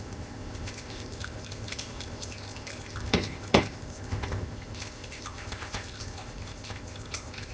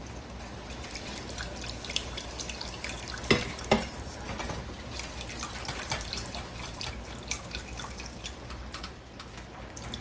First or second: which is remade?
first